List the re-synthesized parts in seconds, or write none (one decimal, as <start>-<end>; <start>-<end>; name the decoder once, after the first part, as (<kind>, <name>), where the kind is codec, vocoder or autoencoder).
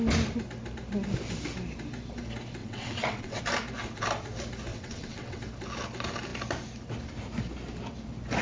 2.6-3.4 (vocoder, WaveNeXt); 4.7-5.4